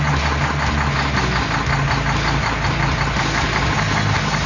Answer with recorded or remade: recorded